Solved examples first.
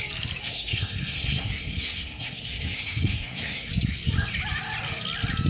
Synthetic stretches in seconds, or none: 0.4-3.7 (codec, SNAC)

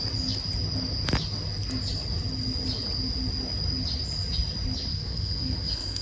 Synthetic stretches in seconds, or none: 4.9-6.0 (codec, SNAC)

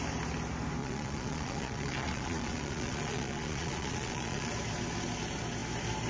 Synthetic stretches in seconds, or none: 0.8-4.5 (vocoder, Vocos)

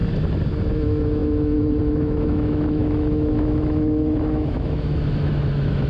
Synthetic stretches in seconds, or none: 0.7-5.9 (autoencoder, DAC-VAE)

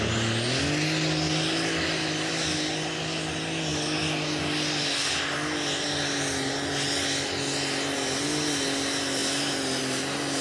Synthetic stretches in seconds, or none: none

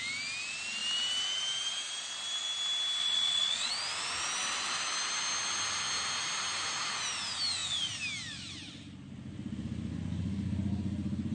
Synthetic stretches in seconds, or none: 3.0-3.7 (vocoder, Vocos)

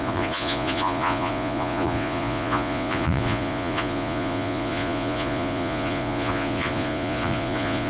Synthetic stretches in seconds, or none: 0.0-7.9 (vocoder, Vocos)

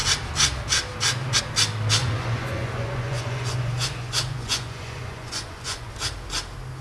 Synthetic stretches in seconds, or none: 2.0-5.9 (vocoder, Vocos)